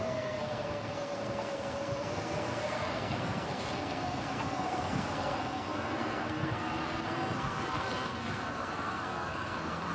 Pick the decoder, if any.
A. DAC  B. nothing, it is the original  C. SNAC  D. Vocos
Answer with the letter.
C